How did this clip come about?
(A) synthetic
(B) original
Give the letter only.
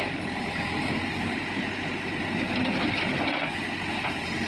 B